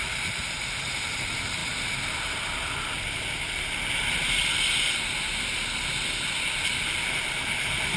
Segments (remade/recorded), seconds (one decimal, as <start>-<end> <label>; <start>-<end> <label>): 0.0-8.0 recorded